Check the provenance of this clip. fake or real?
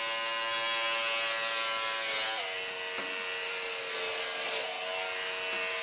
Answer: real